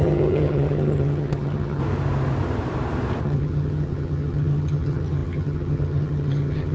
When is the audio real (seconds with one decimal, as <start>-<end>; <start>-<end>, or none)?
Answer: 1.8-3.2